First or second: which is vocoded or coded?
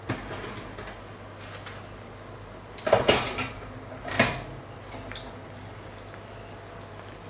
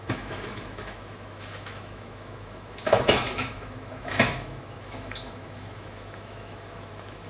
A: second